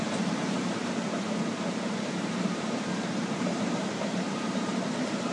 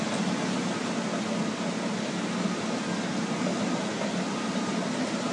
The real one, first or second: second